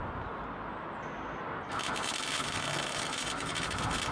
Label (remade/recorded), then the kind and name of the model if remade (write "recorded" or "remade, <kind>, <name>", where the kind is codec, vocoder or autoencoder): recorded